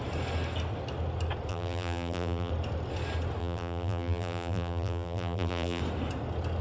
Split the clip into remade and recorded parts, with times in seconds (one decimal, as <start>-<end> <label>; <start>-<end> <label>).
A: 0.0-1.5 recorded; 1.5-2.5 remade; 2.5-3.4 recorded; 3.4-5.8 remade; 5.8-6.6 recorded